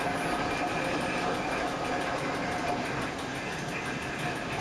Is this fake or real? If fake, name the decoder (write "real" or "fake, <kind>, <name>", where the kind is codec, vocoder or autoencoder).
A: real